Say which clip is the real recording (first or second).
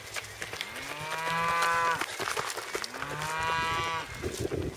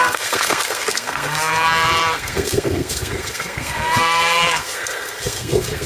first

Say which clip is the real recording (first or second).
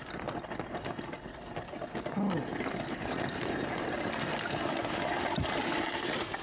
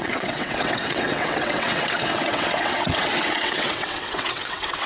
first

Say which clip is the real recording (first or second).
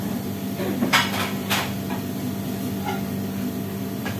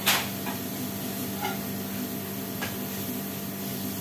second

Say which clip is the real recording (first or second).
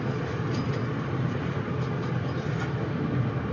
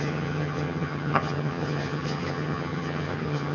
first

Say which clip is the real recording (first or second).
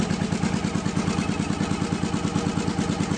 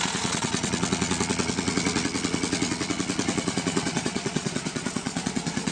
first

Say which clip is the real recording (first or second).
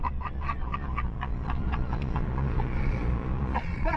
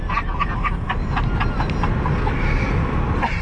second